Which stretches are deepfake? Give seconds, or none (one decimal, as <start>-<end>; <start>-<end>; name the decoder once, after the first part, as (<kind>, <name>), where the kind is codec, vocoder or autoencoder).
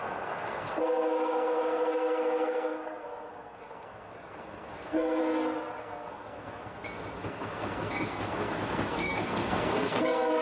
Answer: 0.0-5.2 (codec, SNAC); 5.8-10.4